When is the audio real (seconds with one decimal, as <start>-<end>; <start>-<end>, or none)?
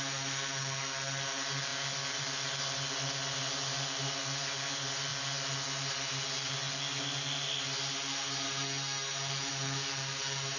0.0-10.6